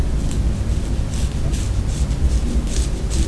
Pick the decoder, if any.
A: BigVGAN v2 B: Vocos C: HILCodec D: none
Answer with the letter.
D